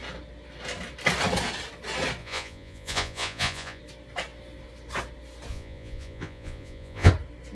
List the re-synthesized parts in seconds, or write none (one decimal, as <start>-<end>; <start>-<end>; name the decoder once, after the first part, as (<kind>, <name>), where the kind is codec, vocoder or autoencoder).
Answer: 2.2-3.8 (vocoder, Vocos); 5.5-7.1